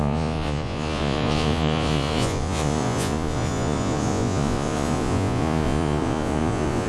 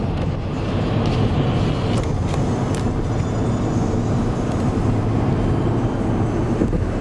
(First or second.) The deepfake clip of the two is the first